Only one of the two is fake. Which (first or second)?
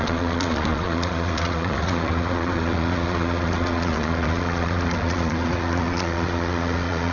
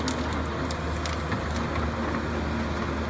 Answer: first